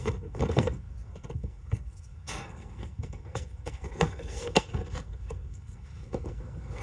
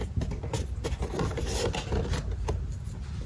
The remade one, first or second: first